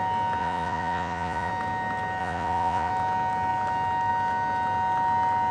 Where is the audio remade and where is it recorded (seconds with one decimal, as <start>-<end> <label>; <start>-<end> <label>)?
0.0-0.4 recorded; 0.4-1.5 remade; 1.5-2.2 recorded; 2.2-2.9 remade; 2.9-5.5 recorded